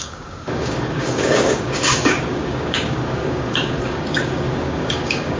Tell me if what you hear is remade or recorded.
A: remade